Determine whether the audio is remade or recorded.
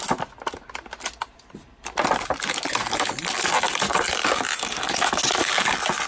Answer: recorded